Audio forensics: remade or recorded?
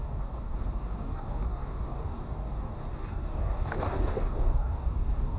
remade